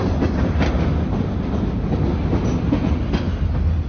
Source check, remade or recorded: recorded